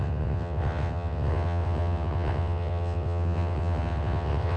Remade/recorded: remade